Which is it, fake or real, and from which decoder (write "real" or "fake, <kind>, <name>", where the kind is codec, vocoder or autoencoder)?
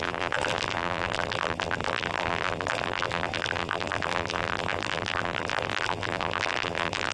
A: fake, vocoder, BigVGAN v2